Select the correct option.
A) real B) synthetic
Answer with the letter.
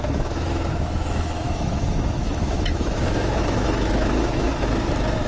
B